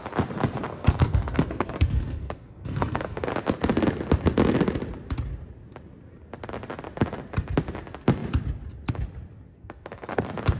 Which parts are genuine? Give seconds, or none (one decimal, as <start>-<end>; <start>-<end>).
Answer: 0.0-0.7; 3.3-9.5; 10.2-10.6